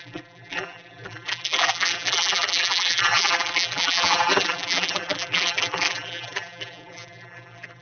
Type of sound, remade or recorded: remade